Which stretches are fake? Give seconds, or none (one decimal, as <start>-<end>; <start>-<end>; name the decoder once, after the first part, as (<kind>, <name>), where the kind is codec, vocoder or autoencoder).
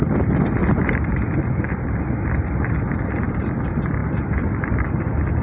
0.6-1.8 (vocoder, BigVGAN v2)